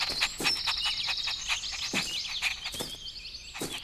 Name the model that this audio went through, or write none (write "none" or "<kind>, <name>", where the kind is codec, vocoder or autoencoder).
none